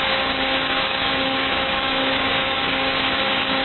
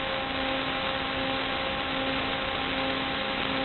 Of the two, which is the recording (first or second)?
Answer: second